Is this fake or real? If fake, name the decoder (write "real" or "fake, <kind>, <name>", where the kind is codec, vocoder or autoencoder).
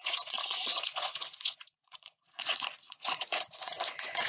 fake, vocoder, Vocos